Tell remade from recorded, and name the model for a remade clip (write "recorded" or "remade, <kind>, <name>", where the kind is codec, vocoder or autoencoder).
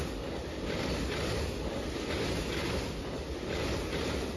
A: recorded